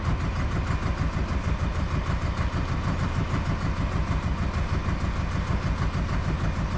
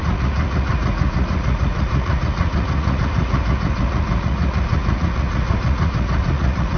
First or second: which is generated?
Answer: second